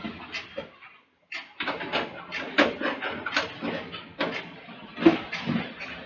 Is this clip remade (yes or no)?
no